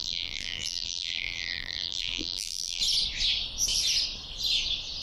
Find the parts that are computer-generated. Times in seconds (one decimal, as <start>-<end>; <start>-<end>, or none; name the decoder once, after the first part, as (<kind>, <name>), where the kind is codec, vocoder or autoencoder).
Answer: 0.0-2.8 (vocoder, BigVGAN v2)